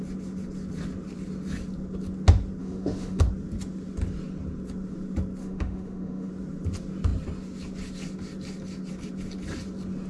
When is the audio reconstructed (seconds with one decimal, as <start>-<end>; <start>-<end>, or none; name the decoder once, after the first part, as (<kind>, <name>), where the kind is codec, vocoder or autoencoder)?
2.6-3.2 (autoencoder, DAC-VAE); 5.4-6.3